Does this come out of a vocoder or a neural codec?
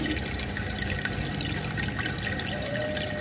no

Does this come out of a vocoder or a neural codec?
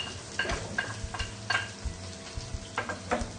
no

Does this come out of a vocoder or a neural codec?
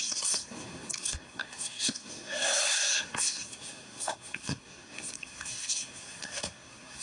yes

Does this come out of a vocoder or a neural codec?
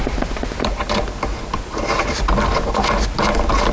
no